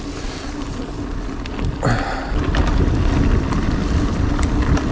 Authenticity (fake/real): real